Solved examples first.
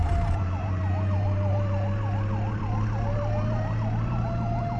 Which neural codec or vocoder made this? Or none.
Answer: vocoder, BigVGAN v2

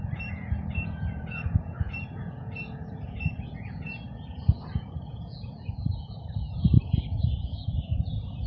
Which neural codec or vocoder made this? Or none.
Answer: vocoder, Vocos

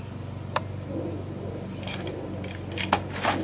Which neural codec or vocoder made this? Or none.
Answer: none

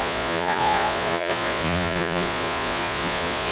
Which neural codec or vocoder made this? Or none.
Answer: vocoder, Vocos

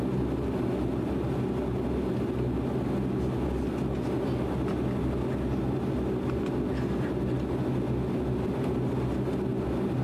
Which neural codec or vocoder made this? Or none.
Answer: none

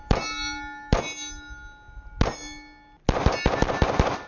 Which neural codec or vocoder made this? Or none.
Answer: none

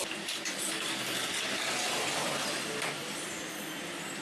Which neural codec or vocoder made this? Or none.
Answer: none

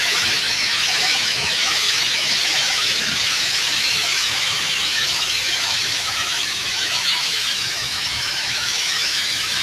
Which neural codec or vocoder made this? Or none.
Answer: autoencoder, DAC-VAE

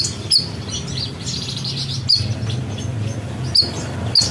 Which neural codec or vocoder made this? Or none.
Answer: none